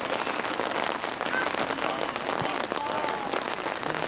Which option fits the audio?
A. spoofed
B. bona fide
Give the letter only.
B